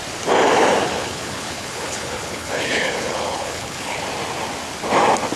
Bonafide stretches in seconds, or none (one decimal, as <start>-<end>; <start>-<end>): 0.0-0.8; 4.0-5.4